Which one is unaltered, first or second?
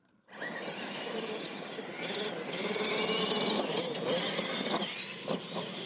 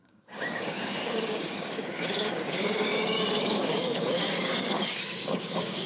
first